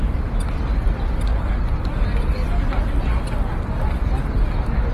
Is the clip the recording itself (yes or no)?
yes